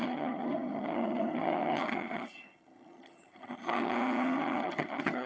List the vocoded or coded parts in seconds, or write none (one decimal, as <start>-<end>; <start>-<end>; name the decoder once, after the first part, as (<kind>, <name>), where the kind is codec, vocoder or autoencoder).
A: 0.0-5.3 (vocoder, HiFi-GAN)